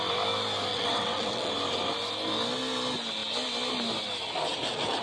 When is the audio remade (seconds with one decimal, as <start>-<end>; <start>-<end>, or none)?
0.7-1.5

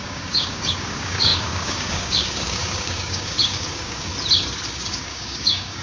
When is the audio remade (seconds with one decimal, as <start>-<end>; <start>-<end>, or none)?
0.0-4.1; 4.7-5.8

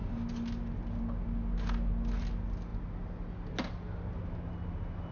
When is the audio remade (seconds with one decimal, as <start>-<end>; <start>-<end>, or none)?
none

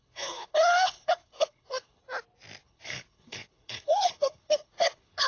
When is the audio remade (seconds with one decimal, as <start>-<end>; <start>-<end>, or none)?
0.0-2.0; 2.6-5.3

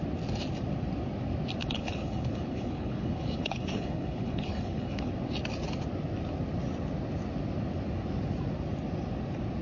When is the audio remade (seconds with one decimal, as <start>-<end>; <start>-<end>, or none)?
1.6-5.1

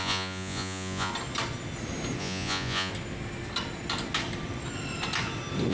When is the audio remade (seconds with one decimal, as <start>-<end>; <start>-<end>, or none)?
0.0-1.1; 2.2-2.9